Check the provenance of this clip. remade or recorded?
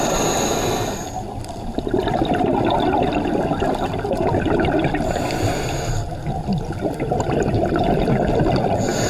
recorded